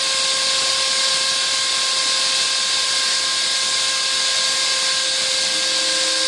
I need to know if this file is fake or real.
real